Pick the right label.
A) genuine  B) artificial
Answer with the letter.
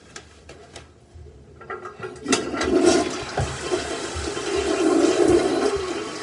A